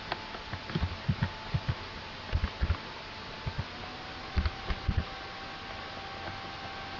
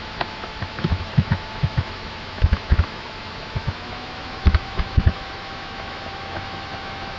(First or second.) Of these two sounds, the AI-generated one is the second